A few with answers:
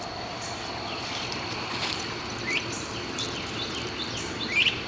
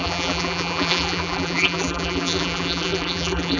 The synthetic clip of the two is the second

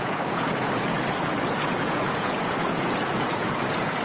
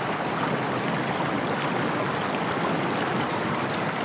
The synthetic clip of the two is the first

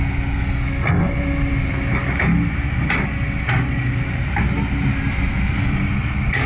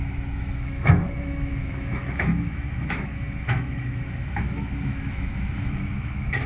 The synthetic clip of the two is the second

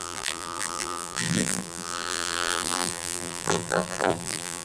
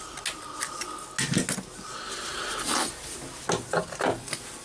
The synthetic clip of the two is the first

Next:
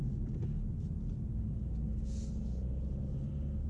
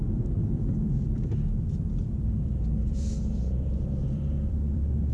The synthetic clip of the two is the second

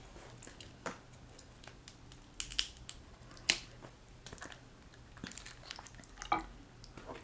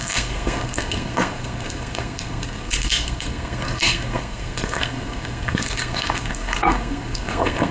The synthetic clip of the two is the second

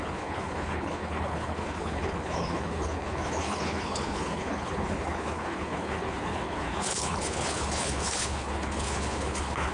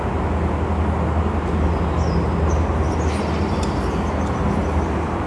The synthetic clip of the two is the first